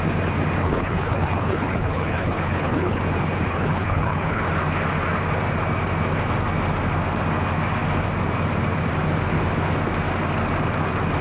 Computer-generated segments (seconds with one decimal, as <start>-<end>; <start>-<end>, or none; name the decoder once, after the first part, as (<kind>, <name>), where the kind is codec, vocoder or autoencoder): 0.6-3.0 (codec, HILCodec); 3.5-4.4

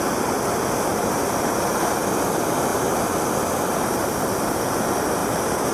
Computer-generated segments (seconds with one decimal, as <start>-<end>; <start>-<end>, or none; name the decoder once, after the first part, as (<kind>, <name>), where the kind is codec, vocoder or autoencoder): 0.9-1.7 (vocoder, BigVGAN v2); 2.7-4.0; 5.2-5.7